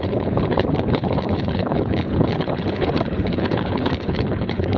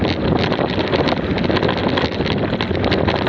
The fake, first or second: first